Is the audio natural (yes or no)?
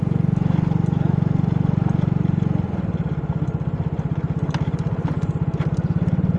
yes